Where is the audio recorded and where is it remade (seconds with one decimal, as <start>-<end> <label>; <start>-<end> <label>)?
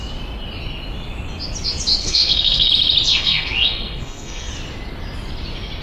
0.0-2.0 recorded; 2.0-2.7 remade; 2.7-3.1 recorded; 3.1-4.5 remade; 4.5-5.8 recorded